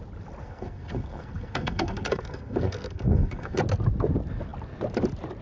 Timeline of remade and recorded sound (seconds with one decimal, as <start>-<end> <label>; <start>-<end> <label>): 0.0-0.4 recorded; 0.4-3.6 remade; 3.6-5.4 recorded